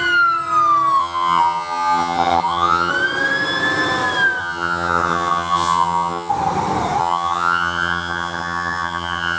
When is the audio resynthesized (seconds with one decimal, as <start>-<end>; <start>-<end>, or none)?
1.0-2.9; 4.4-6.3; 7.0-9.4